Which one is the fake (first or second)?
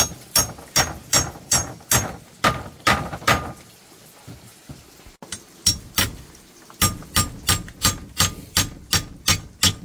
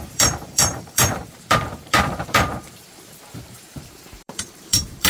second